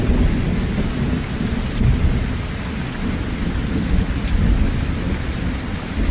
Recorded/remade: recorded